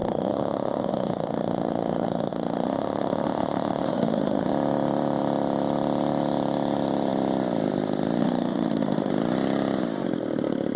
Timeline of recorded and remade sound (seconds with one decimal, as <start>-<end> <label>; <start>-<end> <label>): 0.0-4.5 remade; 4.5-8.2 recorded; 8.2-9.1 remade; 9.1-10.8 recorded